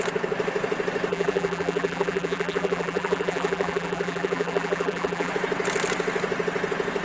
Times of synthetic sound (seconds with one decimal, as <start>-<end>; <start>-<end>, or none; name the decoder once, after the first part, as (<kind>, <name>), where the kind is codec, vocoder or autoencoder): 1.1-5.3 (vocoder, BigVGAN v2)